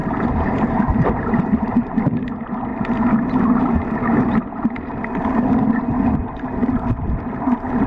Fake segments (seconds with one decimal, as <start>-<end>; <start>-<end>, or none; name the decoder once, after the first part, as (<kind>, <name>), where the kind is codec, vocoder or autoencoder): 0.0-2.0 (vocoder, BigVGAN v2)

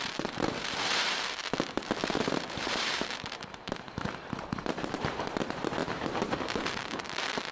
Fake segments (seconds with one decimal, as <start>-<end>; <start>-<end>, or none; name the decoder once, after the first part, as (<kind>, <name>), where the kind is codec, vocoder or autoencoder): 0.0-1.4 (vocoder, BigVGAN v2); 2.1-7.5

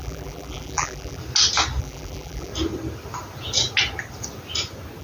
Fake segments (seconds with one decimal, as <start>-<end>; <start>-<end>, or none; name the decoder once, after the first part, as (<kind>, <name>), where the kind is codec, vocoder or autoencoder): 0.0-1.2 (vocoder, BigVGAN v2); 1.8-2.5

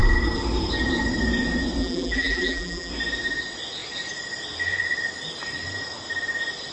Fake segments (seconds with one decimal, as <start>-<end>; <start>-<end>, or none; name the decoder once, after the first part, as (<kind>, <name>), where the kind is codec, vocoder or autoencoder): 1.8-2.9 (vocoder, BigVGAN v2)

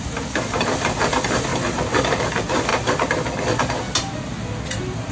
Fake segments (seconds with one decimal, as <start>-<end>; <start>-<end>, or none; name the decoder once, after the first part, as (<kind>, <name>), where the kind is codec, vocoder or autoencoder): 0.0-2.7 (vocoder, BigVGAN v2)